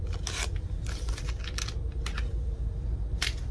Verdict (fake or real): real